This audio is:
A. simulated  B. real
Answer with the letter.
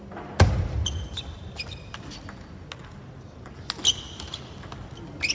B